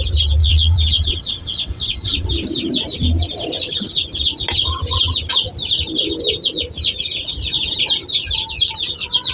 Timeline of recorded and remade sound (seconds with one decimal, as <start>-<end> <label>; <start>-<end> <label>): 0.0-0.4 recorded; 0.4-2.3 remade; 2.3-9.3 recorded